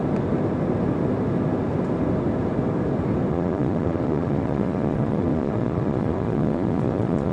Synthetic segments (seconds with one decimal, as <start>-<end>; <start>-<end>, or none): 3.3-7.3